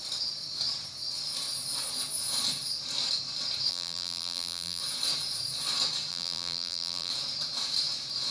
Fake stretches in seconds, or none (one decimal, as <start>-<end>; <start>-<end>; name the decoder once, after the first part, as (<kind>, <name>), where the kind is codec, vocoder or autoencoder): 3.7-4.8 (vocoder, BigVGAN v2); 6.1-7.1